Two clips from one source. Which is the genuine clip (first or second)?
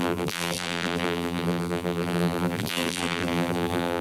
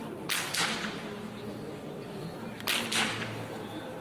second